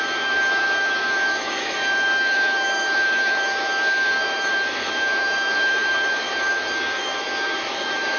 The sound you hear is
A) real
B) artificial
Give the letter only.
B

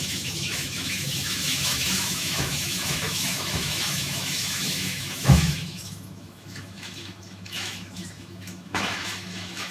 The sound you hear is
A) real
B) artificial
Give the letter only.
B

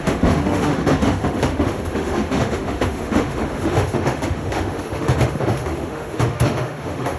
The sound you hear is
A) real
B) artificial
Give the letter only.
B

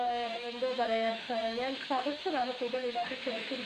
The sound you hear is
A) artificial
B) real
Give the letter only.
A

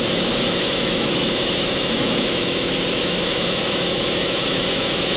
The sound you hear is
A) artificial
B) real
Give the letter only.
A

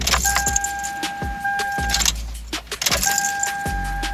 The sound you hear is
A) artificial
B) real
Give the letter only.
B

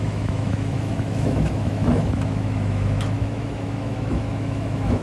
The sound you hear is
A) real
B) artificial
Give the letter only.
B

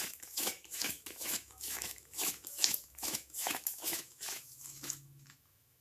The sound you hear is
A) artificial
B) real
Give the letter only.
A